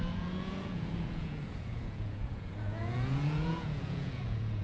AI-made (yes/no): yes